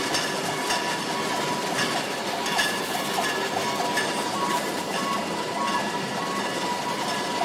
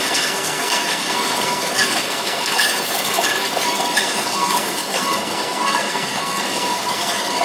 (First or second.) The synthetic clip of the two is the second